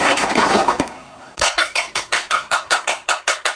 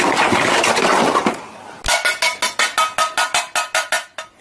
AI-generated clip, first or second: first